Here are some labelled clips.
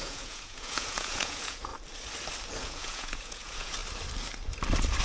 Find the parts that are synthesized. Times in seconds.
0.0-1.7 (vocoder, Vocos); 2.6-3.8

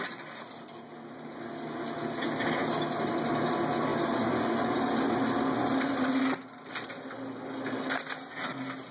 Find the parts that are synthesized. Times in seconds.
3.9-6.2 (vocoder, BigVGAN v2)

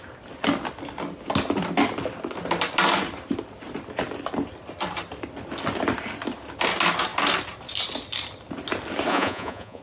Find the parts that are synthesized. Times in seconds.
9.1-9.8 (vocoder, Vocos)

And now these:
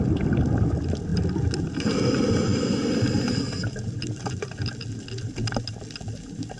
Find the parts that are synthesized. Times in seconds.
none

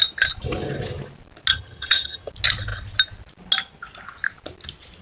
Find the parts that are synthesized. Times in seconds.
1.5-2.3 (vocoder, HiFi-GAN)